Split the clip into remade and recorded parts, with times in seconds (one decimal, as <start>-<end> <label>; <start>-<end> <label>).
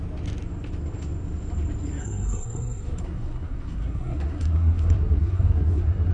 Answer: 0.0-2.0 recorded; 2.0-6.1 remade